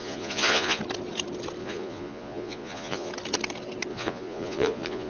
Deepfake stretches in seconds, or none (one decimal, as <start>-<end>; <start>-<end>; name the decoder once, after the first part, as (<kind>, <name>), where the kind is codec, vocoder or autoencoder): 0.0-0.8 (vocoder, Vocos); 1.6-3.1; 3.9-5.1